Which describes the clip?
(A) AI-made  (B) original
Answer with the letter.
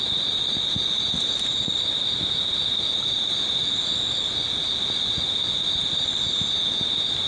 B